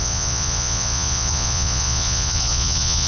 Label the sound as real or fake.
fake